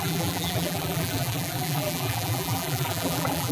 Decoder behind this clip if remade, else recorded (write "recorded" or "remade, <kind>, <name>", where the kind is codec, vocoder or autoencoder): remade, vocoder, BigVGAN v2